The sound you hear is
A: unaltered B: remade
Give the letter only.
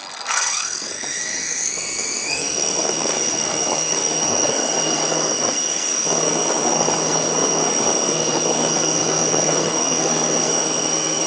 B